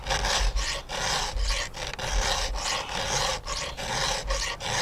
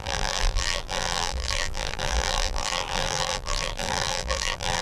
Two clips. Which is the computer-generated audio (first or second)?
second